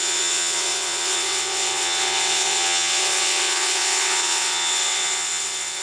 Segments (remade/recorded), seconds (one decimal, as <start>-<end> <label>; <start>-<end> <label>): 0.0-5.8 remade

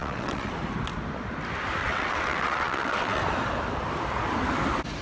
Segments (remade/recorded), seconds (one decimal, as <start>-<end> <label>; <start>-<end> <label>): 0.0-0.5 remade; 0.5-1.8 recorded; 1.8-3.2 remade; 3.2-5.0 recorded